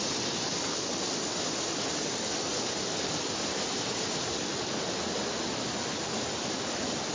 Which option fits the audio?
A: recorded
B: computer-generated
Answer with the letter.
A